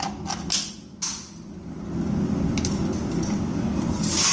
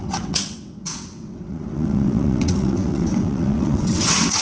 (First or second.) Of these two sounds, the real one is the first